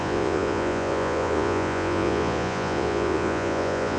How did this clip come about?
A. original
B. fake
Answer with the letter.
B